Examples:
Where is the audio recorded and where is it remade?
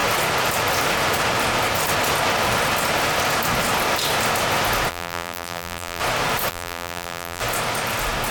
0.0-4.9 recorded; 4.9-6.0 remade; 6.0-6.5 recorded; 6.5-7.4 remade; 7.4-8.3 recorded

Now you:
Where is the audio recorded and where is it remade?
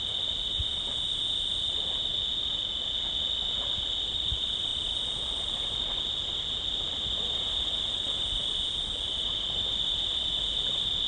0.0-11.1 recorded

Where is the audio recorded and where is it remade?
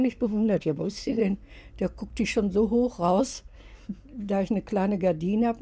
0.0-1.2 remade; 1.2-3.2 recorded; 3.2-3.8 remade; 3.8-5.6 recorded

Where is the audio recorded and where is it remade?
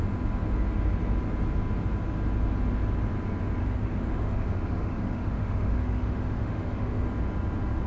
0.0-3.6 recorded; 3.6-7.0 remade; 7.0-7.9 recorded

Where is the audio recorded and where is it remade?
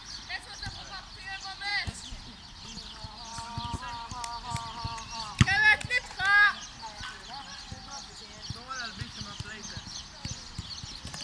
0.0-11.2 recorded